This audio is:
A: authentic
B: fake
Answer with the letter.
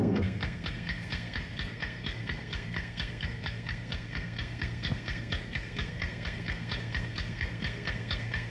B